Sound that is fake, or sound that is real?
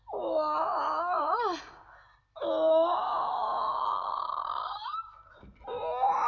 real